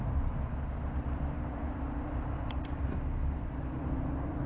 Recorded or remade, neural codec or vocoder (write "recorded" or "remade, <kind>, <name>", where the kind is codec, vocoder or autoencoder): remade, vocoder, BigVGAN v2